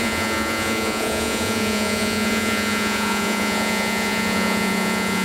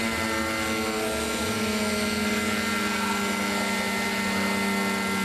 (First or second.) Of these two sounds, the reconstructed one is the first